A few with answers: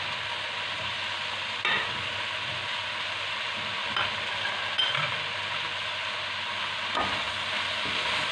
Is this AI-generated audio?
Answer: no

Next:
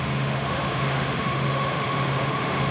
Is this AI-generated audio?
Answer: yes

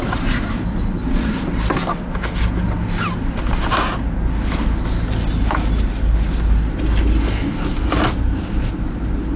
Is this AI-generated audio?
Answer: no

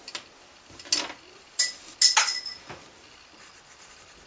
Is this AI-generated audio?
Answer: no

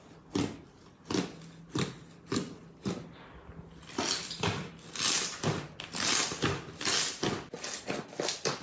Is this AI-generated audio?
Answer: no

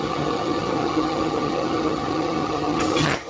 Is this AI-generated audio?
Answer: yes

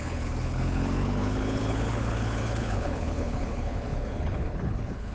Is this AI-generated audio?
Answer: yes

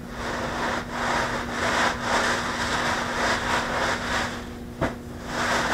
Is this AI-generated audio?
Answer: no